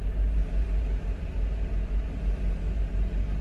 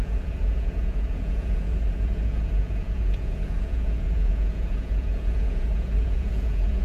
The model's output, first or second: second